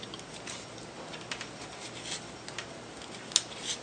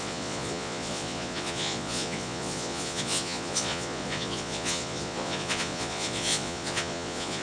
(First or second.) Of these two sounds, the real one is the first